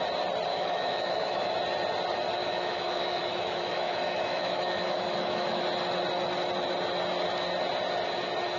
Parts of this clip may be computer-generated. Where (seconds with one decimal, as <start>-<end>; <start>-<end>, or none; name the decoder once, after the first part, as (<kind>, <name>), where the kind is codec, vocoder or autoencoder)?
0.5-1.5 (autoencoder, DAC-VAE); 2.4-5.6